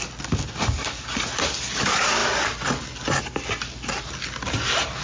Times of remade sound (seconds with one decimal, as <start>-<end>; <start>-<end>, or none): none

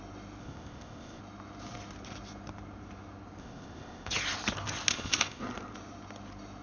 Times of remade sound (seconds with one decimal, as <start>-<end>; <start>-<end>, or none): 0.4-1.2; 3.4-4.1; 4.9-5.4

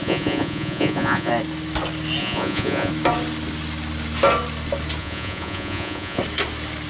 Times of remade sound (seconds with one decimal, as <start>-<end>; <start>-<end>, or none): 0.0-1.3; 2.2-2.9; 5.0-6.2